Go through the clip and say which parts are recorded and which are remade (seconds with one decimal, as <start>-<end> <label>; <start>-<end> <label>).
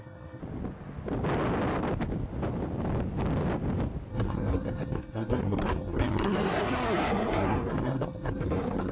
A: 0.0-0.4 remade; 0.4-4.1 recorded; 4.1-8.9 remade